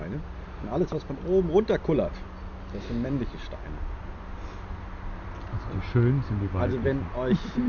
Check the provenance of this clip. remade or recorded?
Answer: recorded